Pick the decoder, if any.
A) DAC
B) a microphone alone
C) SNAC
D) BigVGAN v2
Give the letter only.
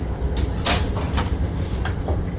B